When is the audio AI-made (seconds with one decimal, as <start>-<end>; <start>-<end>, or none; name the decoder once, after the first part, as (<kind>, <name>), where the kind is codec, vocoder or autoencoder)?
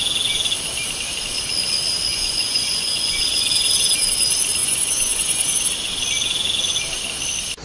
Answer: 2.1-3.2 (vocoder, Vocos); 4.6-5.5